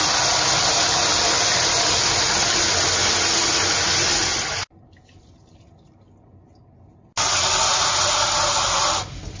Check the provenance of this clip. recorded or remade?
recorded